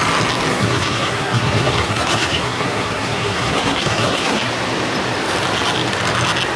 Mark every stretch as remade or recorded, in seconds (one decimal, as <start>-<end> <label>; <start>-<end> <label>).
0.0-0.5 recorded; 0.5-4.5 remade; 4.5-6.6 recorded